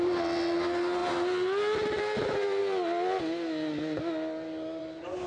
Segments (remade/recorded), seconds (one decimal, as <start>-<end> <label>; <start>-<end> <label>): 0.0-5.3 recorded